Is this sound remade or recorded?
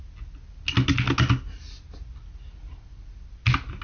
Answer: recorded